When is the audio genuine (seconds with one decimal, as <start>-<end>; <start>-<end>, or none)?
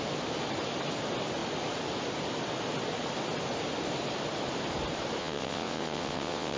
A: 0.0-5.2